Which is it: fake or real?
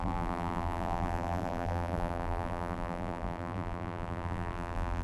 fake